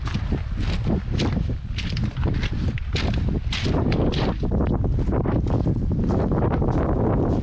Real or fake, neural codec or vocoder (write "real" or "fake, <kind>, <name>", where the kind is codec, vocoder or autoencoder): real